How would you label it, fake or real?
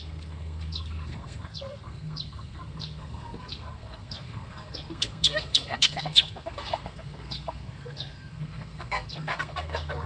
fake